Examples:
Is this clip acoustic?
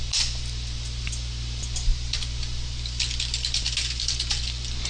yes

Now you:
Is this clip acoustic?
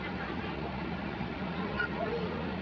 no